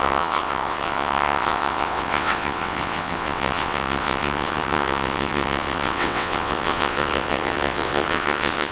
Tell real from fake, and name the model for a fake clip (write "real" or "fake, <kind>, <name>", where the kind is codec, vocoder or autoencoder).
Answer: fake, vocoder, WaveNeXt